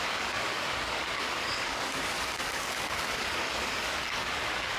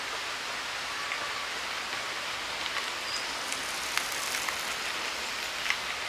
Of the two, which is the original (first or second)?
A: second